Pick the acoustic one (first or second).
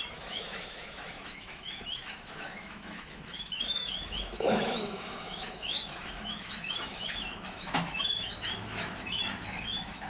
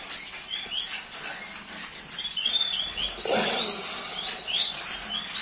second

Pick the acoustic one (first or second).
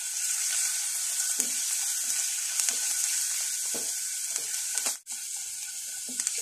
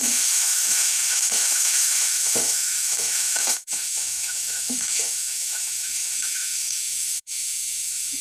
first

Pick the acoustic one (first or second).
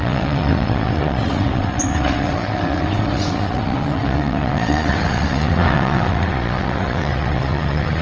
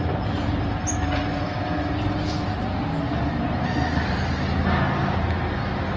second